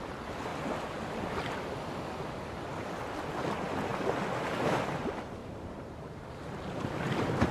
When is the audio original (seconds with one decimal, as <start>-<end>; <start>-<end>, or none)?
0.0-5.4; 6.3-7.5